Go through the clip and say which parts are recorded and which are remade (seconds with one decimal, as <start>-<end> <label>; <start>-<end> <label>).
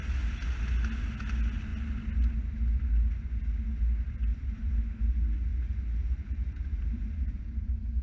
0.0-4.3 recorded; 4.3-5.0 remade; 5.0-5.5 recorded; 5.5-8.0 remade